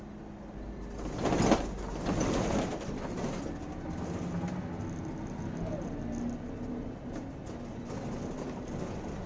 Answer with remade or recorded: recorded